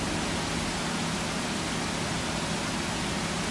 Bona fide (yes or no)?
yes